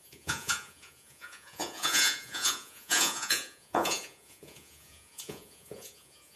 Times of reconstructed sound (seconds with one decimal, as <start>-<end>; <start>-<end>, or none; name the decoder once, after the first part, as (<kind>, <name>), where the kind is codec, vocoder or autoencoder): 0.0-6.4 (vocoder, Vocos)